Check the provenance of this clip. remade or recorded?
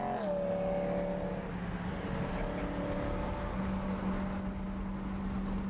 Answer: recorded